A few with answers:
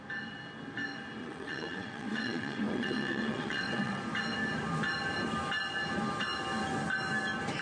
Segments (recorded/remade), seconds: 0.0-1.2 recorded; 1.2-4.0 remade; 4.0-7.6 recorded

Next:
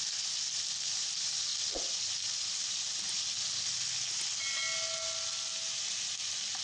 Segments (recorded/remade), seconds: 0.0-6.6 recorded

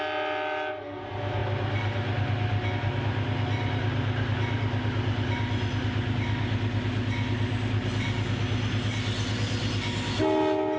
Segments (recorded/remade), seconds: 0.0-10.8 recorded

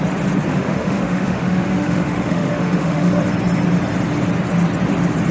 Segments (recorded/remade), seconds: 0.0-0.5 recorded; 0.5-3.1 remade; 3.1-5.3 recorded

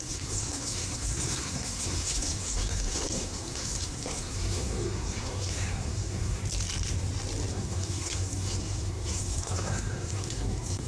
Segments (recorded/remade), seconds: 0.0-6.4 remade; 6.4-7.5 recorded; 7.5-10.9 remade

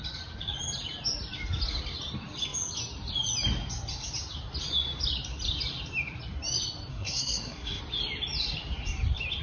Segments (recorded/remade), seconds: 0.0-6.9 recorded; 6.9-7.8 remade; 7.8-9.4 recorded

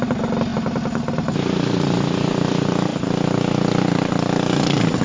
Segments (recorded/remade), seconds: 0.0-5.0 recorded